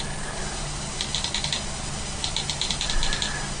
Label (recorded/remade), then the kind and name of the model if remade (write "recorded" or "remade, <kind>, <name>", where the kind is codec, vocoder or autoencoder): recorded